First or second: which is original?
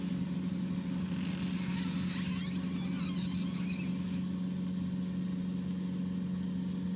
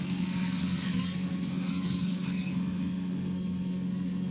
first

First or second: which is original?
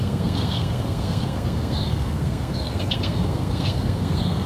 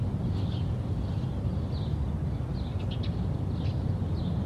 second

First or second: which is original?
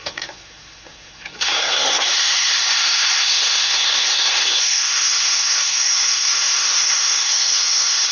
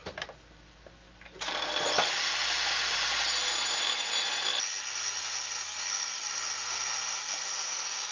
second